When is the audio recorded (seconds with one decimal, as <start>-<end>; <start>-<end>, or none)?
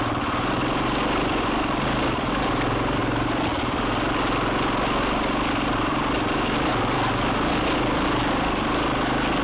0.0-9.4